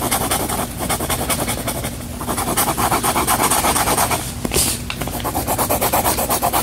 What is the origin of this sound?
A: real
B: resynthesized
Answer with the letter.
B